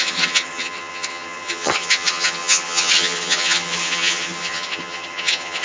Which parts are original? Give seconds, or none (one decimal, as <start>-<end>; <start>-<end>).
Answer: none